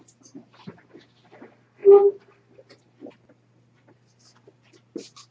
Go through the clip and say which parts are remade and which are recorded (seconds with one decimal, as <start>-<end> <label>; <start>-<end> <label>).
0.0-5.3 recorded